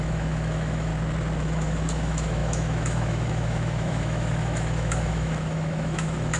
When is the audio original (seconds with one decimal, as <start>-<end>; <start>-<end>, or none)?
0.9-1.4